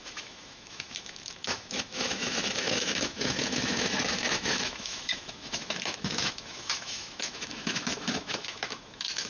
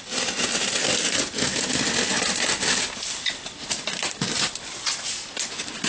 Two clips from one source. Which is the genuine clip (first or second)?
second